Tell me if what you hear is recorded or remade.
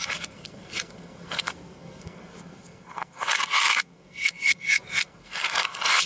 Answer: remade